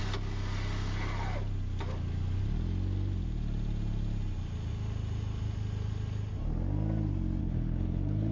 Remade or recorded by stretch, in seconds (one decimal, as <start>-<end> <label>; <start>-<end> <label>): 0.0-7.4 recorded; 7.4-8.3 remade